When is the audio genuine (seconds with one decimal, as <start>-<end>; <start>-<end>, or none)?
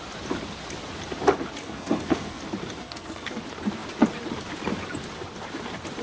0.0-1.6; 2.4-2.8; 3.4-6.0